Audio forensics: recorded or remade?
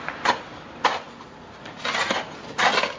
recorded